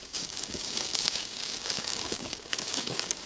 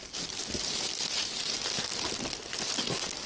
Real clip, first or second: second